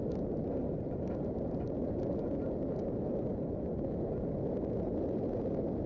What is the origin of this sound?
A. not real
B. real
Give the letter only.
B